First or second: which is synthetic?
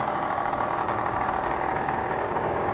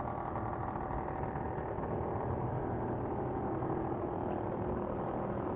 first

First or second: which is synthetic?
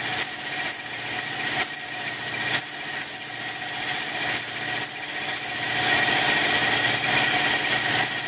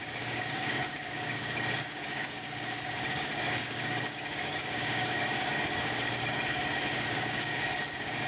second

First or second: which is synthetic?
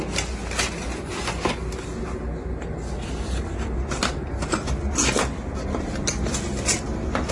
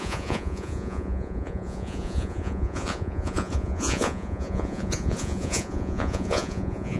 second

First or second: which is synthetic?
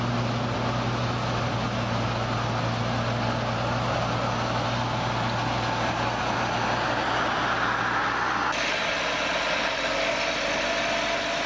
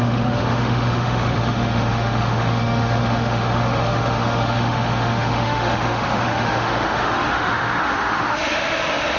second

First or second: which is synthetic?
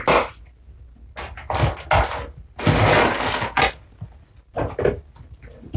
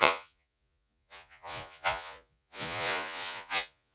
second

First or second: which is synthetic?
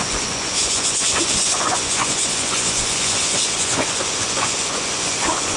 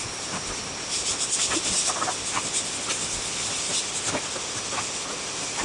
first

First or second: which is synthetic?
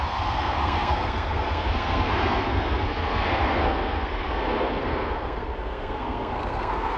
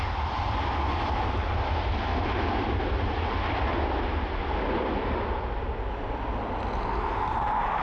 first